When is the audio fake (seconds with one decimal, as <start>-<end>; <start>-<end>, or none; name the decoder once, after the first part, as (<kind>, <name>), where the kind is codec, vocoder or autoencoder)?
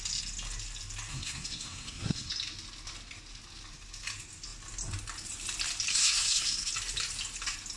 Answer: 1.1-2.3 (codec, SNAC); 5.9-6.7